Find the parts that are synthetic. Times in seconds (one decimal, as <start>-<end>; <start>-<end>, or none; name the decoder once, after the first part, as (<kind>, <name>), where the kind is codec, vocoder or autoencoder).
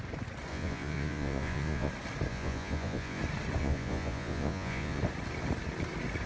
0.5-1.9 (vocoder, Vocos); 2.3-3.2; 3.6-5.0